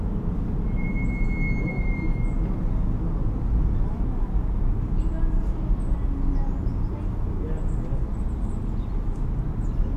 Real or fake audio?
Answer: real